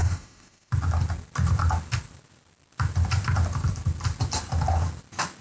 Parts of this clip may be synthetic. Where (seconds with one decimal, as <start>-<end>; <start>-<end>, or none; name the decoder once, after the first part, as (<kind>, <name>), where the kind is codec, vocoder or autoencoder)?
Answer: 0.0-0.7 (autoencoder, DAC-VAE)